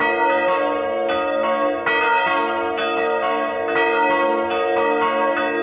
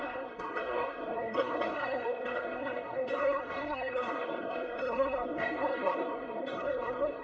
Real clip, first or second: first